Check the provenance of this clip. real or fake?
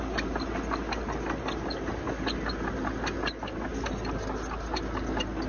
real